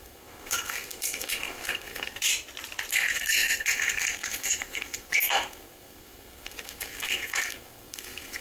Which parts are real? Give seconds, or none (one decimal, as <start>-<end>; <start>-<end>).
2.3-2.9